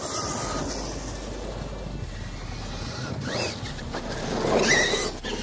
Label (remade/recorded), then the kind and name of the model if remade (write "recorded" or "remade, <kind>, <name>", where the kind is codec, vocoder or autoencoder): recorded